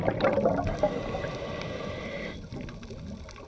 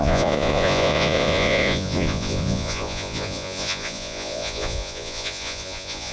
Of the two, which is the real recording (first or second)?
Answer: first